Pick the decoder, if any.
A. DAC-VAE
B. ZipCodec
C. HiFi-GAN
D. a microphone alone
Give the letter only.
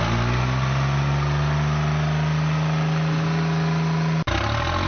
D